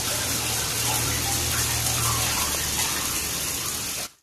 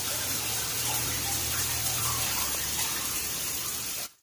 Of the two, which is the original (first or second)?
first